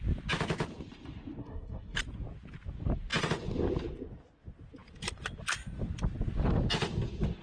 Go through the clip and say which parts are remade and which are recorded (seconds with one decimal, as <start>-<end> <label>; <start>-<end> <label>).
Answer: 0.0-1.4 recorded; 1.4-2.0 remade; 2.0-7.4 recorded